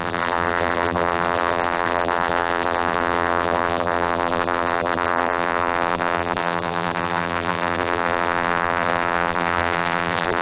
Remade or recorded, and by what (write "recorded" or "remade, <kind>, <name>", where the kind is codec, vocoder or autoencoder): remade, vocoder, BigVGAN v2